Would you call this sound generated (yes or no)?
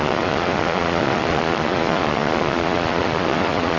yes